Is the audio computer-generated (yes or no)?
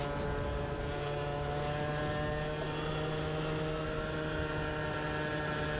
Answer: no